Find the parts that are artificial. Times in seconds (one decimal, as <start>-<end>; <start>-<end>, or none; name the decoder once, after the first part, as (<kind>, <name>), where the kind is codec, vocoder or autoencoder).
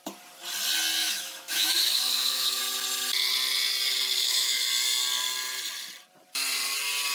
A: 1.0-2.6 (autoencoder, DAC-VAE); 4.2-4.7